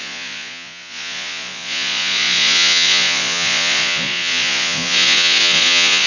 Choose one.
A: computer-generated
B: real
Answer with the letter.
A